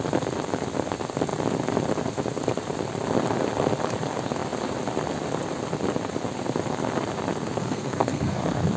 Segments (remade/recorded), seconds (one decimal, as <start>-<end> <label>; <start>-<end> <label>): 0.0-7.3 recorded; 7.3-8.8 remade